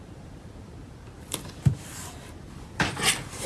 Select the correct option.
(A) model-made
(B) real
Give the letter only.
A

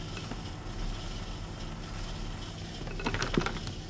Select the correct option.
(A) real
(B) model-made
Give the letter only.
A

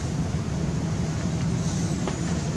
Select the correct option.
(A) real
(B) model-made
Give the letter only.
A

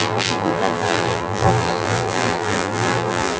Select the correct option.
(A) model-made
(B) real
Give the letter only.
A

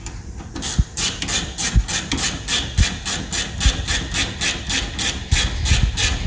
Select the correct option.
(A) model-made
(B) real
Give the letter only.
B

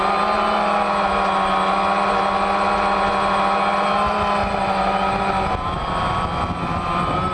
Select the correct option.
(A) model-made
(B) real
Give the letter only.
B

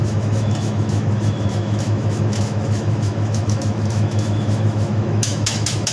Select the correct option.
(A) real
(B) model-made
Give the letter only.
B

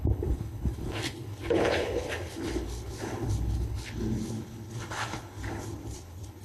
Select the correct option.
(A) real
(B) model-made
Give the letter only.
B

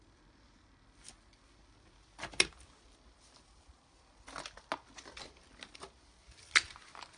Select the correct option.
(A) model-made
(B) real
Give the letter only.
B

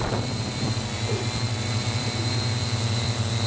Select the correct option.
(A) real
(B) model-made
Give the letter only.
B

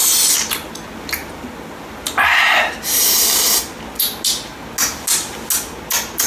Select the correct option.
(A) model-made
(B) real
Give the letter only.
B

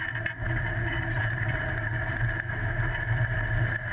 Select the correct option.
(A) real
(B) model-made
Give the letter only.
A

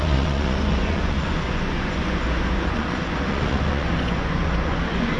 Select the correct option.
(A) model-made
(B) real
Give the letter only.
A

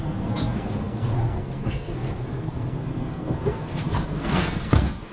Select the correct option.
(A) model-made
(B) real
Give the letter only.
A